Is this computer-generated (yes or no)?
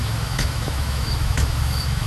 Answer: yes